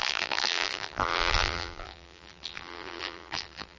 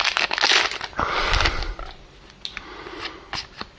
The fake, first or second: first